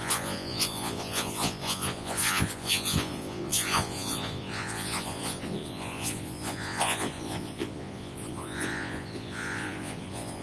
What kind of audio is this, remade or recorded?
remade